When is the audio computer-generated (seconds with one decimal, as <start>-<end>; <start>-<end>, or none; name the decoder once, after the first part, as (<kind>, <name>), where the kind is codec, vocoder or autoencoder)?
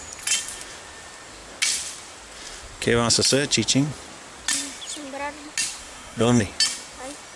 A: 5.8-6.4 (codec, SNAC)